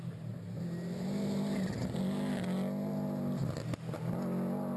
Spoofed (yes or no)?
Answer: no